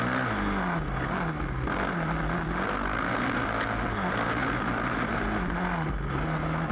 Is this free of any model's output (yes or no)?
yes